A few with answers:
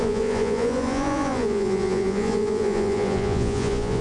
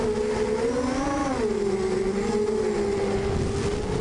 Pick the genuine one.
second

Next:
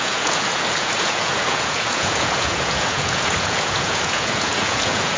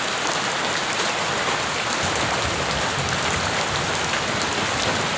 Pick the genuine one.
second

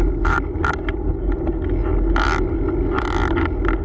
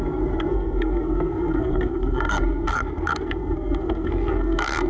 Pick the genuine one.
first